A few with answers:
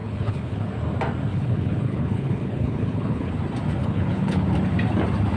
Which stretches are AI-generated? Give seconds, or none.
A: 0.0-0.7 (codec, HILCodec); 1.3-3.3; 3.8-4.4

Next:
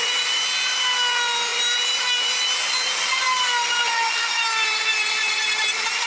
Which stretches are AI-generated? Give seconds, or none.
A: none

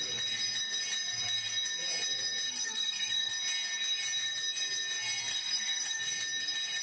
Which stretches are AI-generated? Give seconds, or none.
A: 2.5-3.3 (codec, SNAC); 5.3-6.0